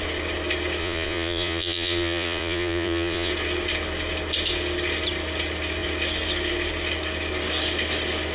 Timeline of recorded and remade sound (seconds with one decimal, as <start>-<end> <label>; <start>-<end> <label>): 0.0-0.8 recorded; 0.8-3.3 remade; 3.3-8.3 recorded